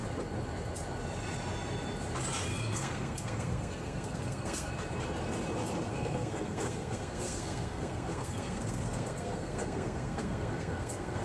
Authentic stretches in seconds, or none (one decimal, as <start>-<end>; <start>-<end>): 0.0-2.5; 4.7-5.9

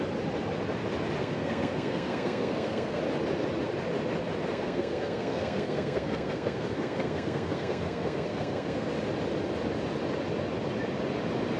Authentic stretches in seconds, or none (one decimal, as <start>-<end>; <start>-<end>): 0.0-1.2; 3.0-4.5; 8.9-11.6

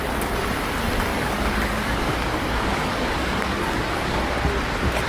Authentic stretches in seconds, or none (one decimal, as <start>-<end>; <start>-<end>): 0.0-1.1; 4.2-5.1

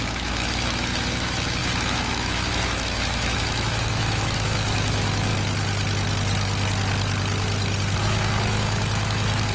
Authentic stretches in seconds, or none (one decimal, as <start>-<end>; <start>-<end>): 5.3-8.0

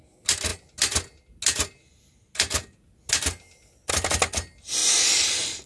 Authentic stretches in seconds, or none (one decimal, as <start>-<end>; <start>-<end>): 0.0-5.7

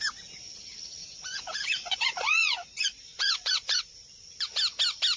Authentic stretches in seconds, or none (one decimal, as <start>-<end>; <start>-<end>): 0.0-1.0; 3.8-5.2

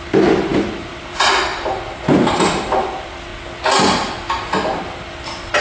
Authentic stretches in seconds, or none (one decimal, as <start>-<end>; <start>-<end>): 1.5-2.5; 3.3-5.1

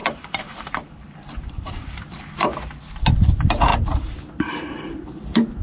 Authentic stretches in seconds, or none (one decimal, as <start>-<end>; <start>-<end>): 2.2-3.7; 5.1-5.6